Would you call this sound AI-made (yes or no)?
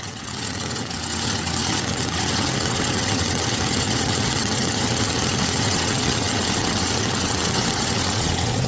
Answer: yes